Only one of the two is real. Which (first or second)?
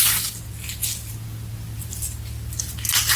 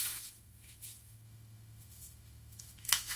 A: first